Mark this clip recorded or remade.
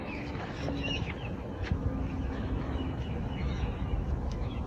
remade